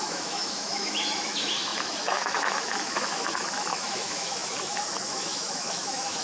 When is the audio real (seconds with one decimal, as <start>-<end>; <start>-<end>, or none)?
none